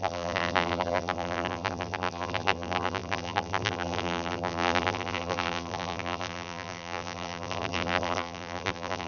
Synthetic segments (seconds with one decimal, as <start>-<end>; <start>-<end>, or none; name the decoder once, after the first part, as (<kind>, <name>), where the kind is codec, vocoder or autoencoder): 0.0-9.1 (vocoder, BigVGAN v2)